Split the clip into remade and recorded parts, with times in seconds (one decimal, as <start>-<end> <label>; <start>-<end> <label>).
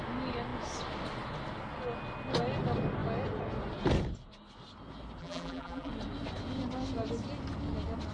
0.0-5.2 recorded; 5.2-5.9 remade; 5.9-8.1 recorded